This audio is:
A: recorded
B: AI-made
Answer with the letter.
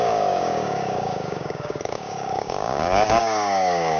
B